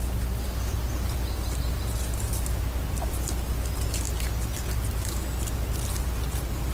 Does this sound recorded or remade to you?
recorded